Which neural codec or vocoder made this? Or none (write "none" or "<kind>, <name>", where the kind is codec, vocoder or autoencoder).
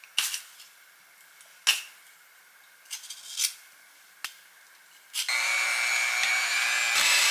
none